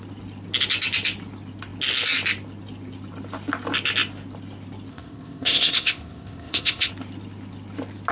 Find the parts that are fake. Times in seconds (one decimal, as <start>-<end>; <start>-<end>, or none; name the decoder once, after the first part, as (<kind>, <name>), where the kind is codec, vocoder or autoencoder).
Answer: 4.9-6.9 (codec, ZipCodec)